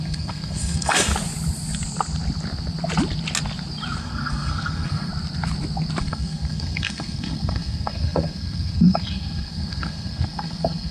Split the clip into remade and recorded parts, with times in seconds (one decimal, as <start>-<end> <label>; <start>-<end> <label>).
0.0-1.1 remade; 1.1-4.0 recorded; 4.0-5.1 remade; 5.1-6.0 recorded; 6.0-10.9 remade